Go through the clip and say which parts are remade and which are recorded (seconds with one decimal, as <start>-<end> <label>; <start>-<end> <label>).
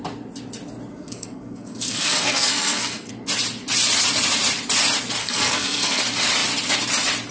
0.0-0.9 recorded; 0.9-3.1 remade; 3.1-5.2 recorded; 5.2-6.0 remade; 6.0-7.3 recorded